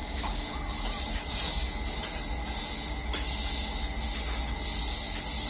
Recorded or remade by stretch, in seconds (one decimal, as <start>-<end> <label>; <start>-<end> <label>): 0.0-5.5 recorded